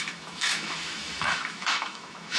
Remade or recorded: remade